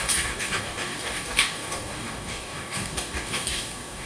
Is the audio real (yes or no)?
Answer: no